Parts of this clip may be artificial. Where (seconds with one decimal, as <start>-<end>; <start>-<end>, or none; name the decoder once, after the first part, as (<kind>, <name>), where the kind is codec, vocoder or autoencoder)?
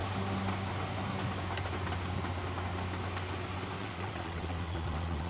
3.8-5.3 (vocoder, WaveNeXt)